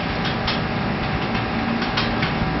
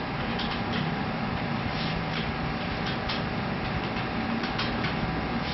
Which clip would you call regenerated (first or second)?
second